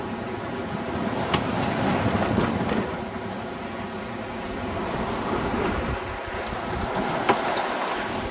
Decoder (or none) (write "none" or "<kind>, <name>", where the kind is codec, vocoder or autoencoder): none